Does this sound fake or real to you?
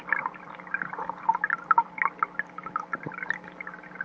real